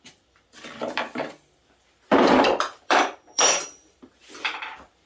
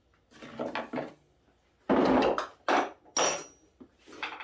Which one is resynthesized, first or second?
first